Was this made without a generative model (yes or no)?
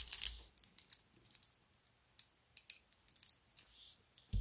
yes